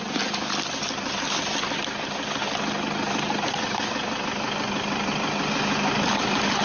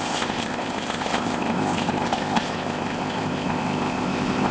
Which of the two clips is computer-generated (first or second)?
second